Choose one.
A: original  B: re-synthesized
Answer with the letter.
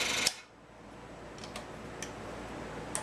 A